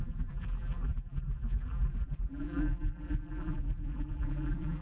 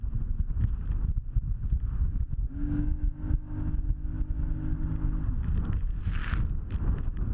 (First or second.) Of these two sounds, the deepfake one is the first